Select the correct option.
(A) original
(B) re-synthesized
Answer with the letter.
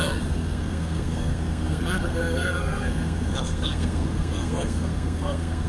B